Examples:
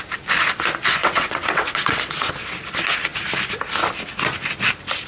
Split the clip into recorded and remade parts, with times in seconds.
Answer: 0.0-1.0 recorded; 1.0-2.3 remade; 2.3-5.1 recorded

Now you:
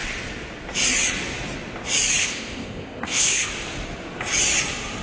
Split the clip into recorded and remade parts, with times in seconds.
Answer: 0.0-2.2 recorded; 2.2-3.5 remade; 3.5-5.0 recorded

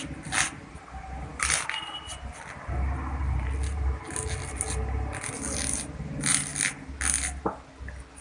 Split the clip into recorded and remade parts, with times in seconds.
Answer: 0.0-8.2 recorded

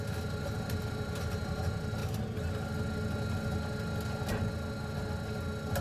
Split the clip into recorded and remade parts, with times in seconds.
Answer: 0.0-5.8 recorded

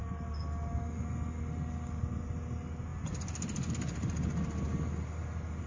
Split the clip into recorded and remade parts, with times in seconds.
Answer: 0.0-2.9 recorded; 2.9-3.7 remade; 3.7-5.7 recorded

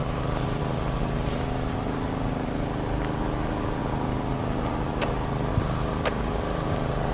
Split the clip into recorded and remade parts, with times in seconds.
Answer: 0.0-7.1 recorded